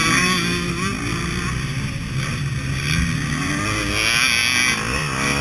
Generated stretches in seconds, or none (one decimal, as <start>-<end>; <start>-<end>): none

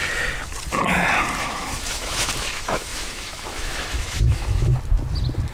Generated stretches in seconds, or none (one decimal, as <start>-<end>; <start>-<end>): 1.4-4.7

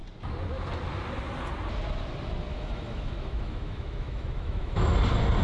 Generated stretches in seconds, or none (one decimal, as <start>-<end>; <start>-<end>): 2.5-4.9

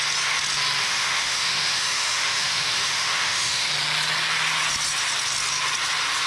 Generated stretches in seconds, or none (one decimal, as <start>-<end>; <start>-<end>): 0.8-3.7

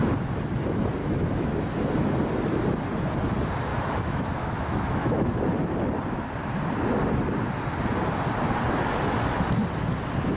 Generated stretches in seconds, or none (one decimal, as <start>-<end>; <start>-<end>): 1.0-1.5; 3.7-5.4